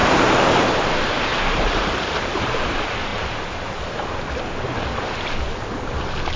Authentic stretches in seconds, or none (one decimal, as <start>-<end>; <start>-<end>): 0.5-1.3; 2.6-6.4